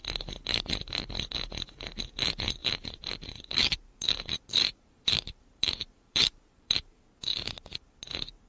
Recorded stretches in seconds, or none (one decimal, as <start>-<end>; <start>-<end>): 0.0-2.6; 7.0-8.5